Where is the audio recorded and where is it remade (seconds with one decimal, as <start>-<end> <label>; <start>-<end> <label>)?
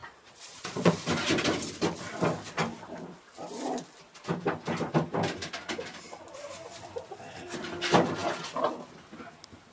0.0-0.9 remade; 0.9-9.7 recorded